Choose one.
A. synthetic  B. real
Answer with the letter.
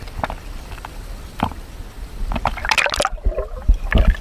B